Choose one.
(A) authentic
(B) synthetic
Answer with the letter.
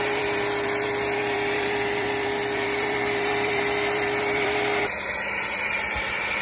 B